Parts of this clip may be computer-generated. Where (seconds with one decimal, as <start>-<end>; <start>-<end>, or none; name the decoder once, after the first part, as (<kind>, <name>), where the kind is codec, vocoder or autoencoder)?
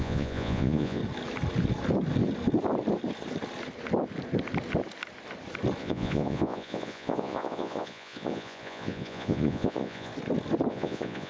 0.0-1.0 (vocoder, Vocos); 5.8-10.1; 10.7-11.3